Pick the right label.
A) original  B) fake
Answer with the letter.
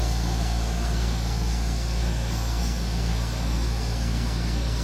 B